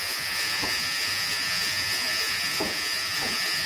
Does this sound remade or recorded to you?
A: remade